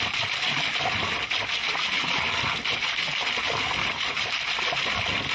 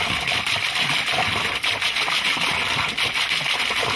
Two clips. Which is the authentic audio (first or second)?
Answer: first